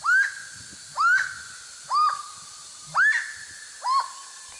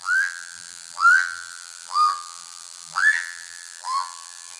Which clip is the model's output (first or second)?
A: second